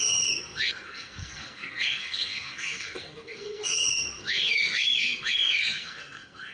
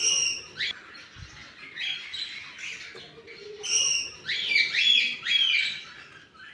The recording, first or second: second